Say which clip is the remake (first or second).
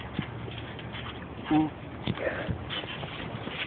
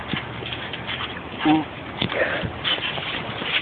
second